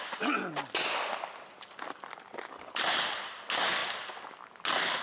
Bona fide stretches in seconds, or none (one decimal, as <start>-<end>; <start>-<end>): 0.0-5.0